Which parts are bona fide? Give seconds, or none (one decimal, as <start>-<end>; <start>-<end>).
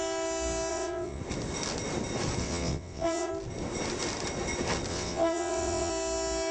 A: 0.0-0.7; 1.2-2.4; 3.3-4.9; 5.9-6.5